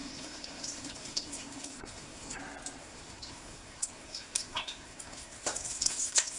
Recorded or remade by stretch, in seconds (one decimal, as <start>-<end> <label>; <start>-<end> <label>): 0.0-2.4 remade; 2.4-2.8 recorded; 2.8-6.4 remade